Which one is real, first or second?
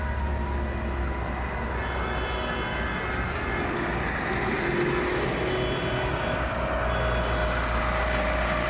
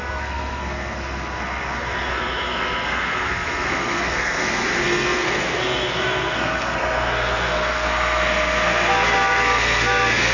first